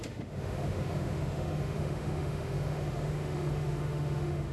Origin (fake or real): fake